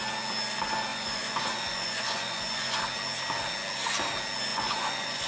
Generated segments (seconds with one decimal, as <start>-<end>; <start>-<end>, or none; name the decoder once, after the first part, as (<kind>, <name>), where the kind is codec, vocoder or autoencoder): 0.9-2.8 (vocoder, Vocos); 4.5-5.3